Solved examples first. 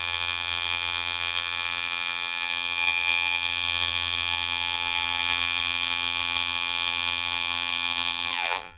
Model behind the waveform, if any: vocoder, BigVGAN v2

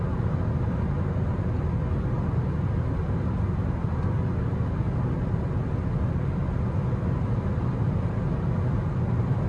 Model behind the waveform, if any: none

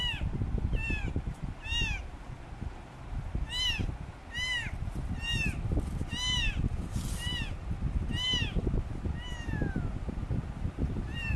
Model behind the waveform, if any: none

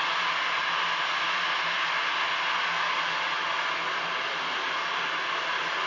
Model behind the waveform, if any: none